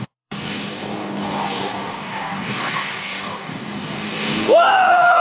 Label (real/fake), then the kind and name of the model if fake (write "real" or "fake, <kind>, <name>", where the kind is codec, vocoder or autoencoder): fake, codec, DAC